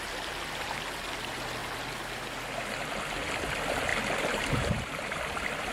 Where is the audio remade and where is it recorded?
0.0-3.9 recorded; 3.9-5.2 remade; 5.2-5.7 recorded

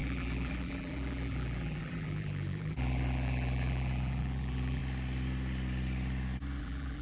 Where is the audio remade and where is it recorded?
0.0-4.8 remade; 4.8-6.6 recorded; 6.6-7.0 remade

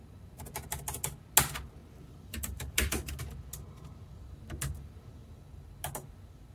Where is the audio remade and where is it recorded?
0.0-1.8 recorded; 1.8-3.2 remade; 3.2-6.5 recorded

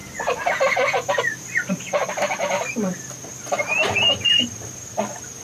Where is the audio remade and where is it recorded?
0.0-5.4 remade

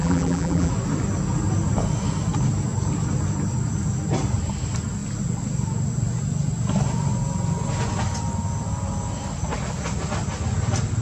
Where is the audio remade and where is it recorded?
0.0-0.7 remade; 0.7-11.0 recorded

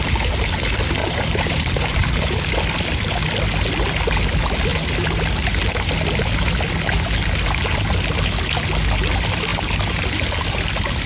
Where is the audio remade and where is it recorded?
0.0-1.0 recorded; 1.0-2.5 remade; 2.5-11.1 recorded